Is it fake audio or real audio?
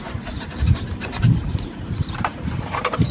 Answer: fake